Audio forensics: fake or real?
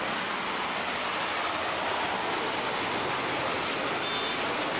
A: real